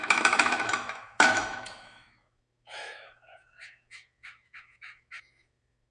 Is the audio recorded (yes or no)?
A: no